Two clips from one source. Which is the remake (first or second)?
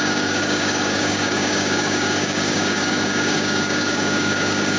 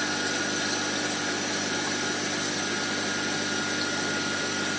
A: first